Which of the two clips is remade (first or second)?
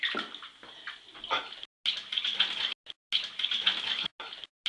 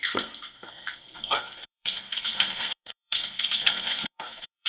second